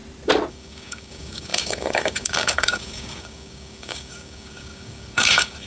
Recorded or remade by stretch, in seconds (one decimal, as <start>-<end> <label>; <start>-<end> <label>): 0.0-0.5 recorded; 0.5-5.7 remade